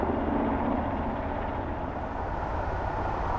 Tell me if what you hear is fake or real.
real